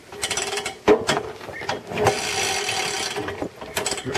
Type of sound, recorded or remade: recorded